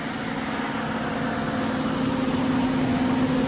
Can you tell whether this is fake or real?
real